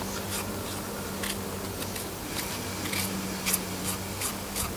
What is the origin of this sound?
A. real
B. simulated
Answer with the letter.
A